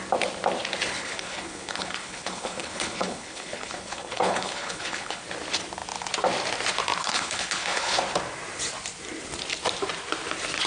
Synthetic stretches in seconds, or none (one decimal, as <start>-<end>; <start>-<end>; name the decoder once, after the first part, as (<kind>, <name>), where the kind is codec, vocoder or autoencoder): 0.9-5.2 (codec, HILCodec); 7.0-8.0